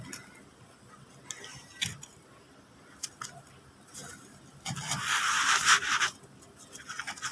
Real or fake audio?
real